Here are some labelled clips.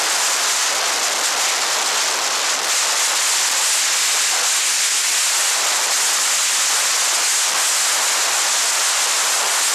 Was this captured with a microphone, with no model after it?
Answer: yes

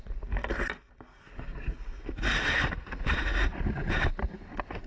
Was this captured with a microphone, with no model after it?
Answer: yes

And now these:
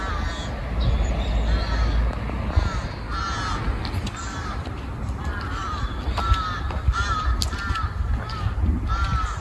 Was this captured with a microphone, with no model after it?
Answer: yes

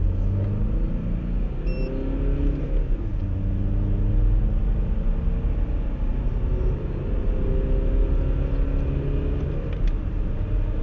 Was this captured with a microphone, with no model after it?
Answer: yes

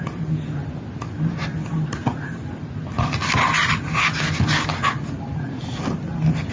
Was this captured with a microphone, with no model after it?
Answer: yes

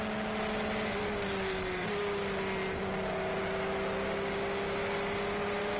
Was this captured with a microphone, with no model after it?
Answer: yes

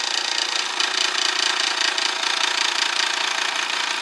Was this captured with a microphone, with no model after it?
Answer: yes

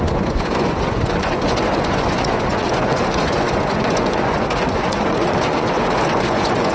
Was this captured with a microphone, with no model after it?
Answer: no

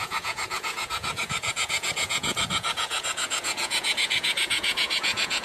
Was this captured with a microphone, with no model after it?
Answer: no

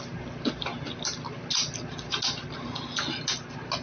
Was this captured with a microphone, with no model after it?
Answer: yes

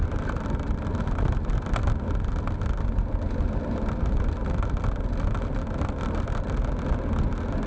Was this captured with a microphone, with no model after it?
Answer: yes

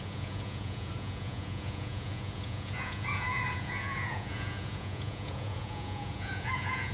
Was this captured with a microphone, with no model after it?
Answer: no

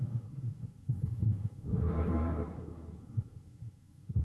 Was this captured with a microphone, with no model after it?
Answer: no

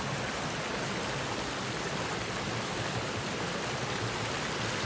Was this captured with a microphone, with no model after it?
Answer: yes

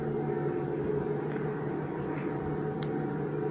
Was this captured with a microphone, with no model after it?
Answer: yes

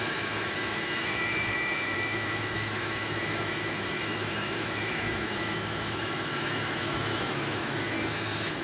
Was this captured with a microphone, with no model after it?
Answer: no